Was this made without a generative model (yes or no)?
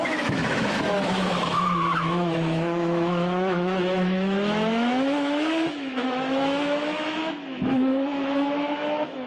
no